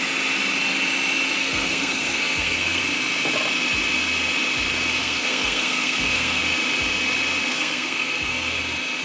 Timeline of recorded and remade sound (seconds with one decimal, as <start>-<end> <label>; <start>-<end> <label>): 0.0-1.4 recorded; 1.4-2.8 remade; 2.8-5.0 recorded; 5.0-6.4 remade; 6.4-7.5 recorded; 7.5-8.6 remade; 8.6-9.0 recorded